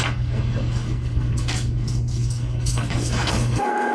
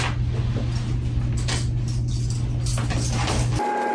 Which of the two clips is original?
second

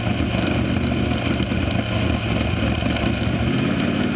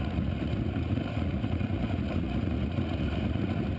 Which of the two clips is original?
first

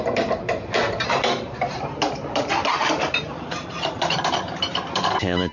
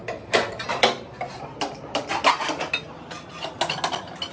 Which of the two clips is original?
second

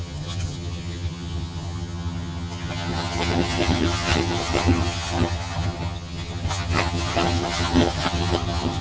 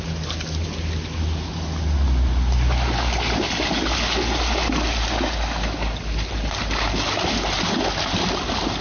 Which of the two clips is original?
second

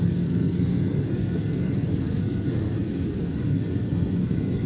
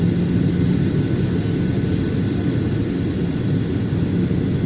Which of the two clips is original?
second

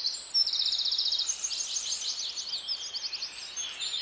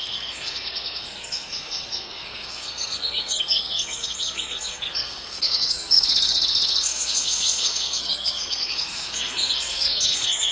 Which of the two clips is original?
first